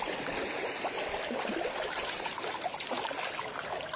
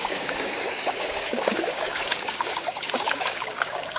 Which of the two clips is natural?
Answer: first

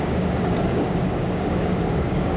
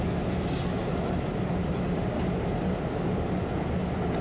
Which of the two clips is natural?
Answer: second